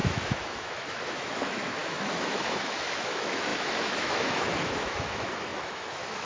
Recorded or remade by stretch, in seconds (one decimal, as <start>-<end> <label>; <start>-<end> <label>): 0.0-6.3 remade